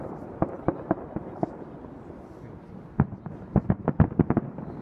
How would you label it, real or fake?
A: real